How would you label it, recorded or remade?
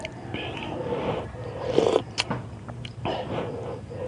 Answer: recorded